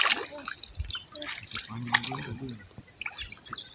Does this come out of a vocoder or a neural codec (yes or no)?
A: no